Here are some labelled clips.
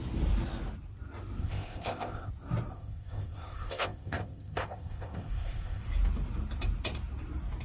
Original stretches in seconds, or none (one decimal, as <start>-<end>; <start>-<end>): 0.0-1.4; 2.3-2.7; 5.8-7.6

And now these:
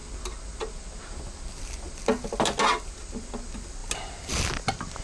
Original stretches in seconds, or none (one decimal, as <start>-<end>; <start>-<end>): 0.0-5.0

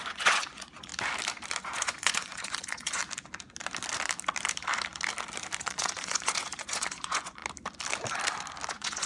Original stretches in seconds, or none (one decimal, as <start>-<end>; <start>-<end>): 0.9-1.6; 3.0-5.6; 7.4-8.7